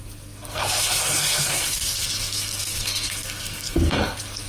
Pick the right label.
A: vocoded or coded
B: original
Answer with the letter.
A